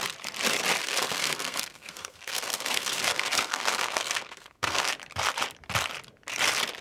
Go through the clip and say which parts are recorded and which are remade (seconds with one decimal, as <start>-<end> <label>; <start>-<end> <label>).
0.0-0.8 recorded; 0.8-4.9 remade; 4.9-6.8 recorded